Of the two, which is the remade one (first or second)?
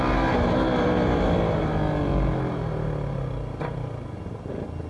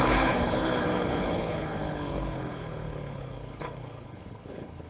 second